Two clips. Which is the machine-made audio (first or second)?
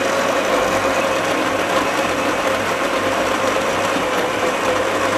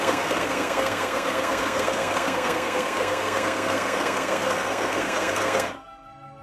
second